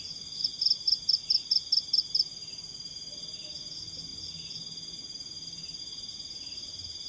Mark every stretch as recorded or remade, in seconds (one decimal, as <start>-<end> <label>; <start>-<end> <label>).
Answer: 0.0-7.1 recorded